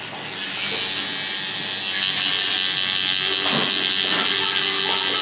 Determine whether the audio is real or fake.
real